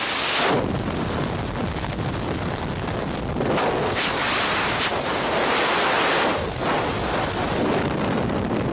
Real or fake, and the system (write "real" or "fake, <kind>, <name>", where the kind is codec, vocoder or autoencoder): real